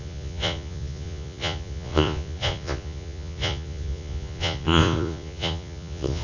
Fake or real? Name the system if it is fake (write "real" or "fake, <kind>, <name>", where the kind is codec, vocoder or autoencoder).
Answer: fake, vocoder, Vocos